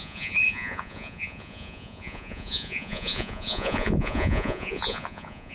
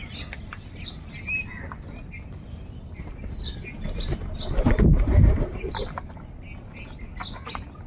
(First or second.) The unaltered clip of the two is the second